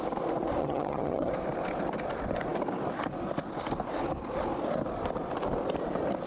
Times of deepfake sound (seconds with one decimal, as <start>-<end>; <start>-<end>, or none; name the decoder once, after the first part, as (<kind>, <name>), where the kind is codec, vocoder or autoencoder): 0.6-1.3 (vocoder, HiFi-GAN)